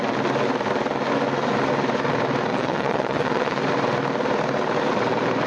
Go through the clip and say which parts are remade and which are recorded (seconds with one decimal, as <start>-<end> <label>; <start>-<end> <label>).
0.0-2.5 recorded; 2.5-3.6 remade; 3.6-5.5 recorded